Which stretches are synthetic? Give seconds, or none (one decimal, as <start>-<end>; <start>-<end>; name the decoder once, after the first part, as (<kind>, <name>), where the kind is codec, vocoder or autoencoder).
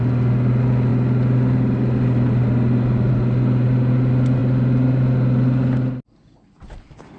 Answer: none